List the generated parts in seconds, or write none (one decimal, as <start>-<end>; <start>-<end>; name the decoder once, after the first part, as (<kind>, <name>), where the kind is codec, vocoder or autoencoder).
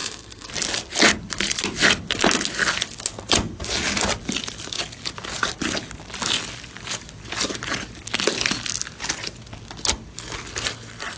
0.0-0.5 (codec, SNAC)